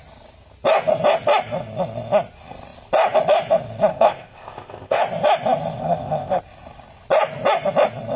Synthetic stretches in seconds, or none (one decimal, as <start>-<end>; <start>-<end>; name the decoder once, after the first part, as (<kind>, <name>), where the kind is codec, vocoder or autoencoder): 3.9-5.0 (codec, ZipCodec); 5.8-6.4